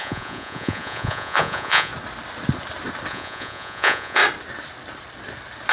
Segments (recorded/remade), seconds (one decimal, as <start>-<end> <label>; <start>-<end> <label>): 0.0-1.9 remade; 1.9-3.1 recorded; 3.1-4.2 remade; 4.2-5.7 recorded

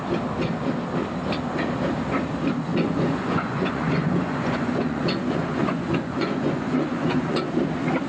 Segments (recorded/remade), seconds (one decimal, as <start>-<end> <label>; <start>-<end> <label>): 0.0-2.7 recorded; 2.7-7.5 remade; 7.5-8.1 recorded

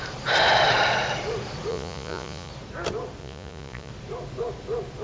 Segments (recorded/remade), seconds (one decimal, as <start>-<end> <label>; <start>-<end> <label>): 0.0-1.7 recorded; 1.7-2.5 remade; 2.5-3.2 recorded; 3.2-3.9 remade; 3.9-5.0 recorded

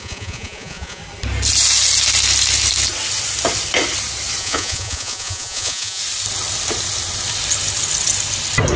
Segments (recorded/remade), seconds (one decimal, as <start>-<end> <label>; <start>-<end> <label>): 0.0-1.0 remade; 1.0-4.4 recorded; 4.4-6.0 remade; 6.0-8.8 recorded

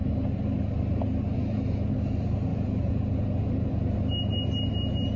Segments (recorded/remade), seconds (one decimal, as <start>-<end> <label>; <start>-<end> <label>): 0.0-2.5 recorded; 2.5-3.8 remade; 3.8-5.2 recorded

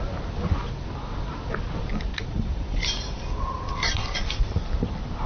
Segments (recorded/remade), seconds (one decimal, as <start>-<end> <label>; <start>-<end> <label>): 0.0-2.1 recorded; 2.1-2.8 remade; 2.8-5.3 recorded

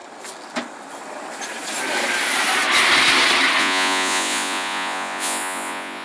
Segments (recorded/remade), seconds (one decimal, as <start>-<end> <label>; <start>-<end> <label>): 0.0-3.6 recorded; 3.6-6.0 remade